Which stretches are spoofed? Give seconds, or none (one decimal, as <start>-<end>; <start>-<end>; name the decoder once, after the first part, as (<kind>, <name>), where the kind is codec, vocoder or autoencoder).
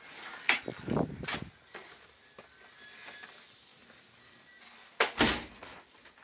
none